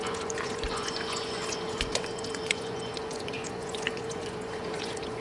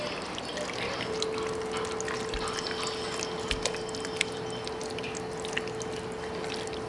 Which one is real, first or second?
second